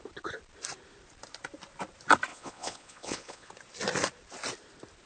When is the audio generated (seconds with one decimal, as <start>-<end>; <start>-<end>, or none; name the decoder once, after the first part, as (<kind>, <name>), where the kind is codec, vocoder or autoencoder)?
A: 2.3-3.5 (vocoder, Vocos)